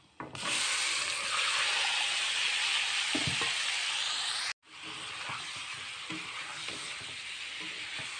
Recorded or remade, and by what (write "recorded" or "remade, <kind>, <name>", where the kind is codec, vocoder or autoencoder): recorded